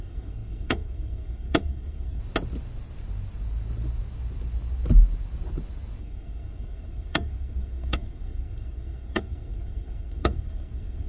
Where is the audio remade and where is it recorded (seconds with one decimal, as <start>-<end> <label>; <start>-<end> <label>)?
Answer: 0.0-2.2 remade; 2.2-6.0 recorded; 6.0-11.1 remade